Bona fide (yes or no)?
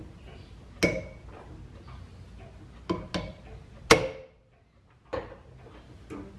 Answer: yes